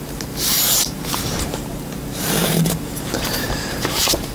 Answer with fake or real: fake